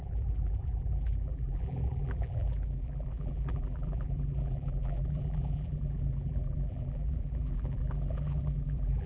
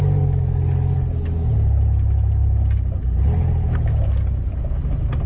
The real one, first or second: second